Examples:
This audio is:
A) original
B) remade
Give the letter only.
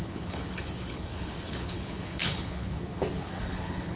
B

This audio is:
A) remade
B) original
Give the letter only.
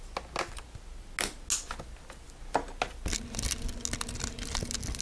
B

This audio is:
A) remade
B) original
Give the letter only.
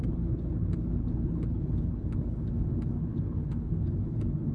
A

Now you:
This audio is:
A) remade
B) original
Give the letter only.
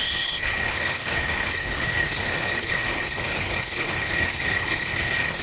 A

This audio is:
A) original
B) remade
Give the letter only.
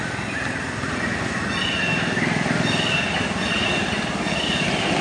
A